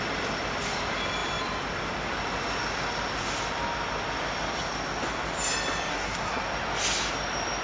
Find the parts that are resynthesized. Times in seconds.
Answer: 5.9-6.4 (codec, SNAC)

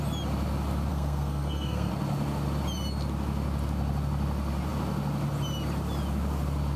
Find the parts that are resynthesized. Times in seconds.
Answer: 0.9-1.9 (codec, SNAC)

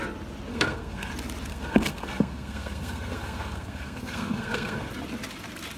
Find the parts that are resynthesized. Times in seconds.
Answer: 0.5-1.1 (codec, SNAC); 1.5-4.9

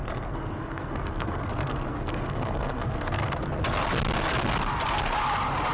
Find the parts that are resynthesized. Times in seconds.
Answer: 0.0-3.4 (codec, SNAC)